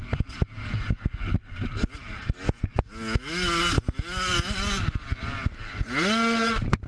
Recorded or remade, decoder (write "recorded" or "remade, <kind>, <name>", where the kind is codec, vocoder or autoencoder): recorded